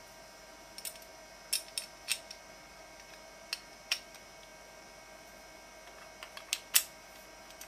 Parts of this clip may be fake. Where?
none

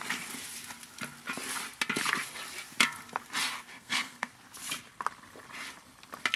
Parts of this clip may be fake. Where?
3.7-4.3 (codec, SNAC)

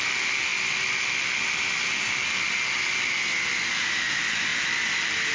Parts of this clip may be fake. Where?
none

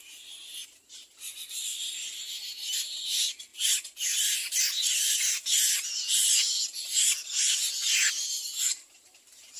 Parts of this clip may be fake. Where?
none